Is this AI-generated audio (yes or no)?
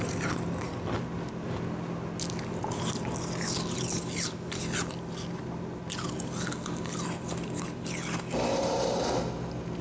no